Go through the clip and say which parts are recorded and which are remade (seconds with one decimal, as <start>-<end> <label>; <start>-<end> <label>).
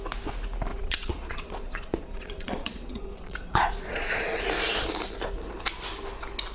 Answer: 0.0-0.7 recorded; 0.7-4.4 remade; 4.4-6.5 recorded